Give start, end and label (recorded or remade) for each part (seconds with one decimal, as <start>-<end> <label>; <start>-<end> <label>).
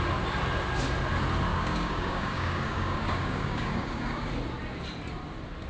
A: 0.0-1.5 recorded; 1.5-4.3 remade; 4.3-5.7 recorded